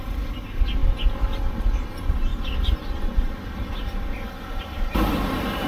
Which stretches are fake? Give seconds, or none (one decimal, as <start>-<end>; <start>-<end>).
none